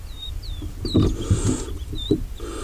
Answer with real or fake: real